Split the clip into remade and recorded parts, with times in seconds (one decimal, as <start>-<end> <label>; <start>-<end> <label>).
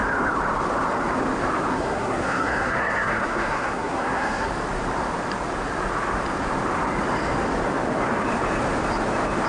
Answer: 0.0-1.7 recorded; 1.7-4.5 remade; 4.5-9.5 recorded